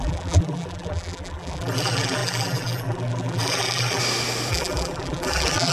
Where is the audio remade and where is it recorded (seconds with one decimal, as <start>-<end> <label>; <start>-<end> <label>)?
0.0-4.0 remade; 4.0-4.5 recorded; 4.5-5.7 remade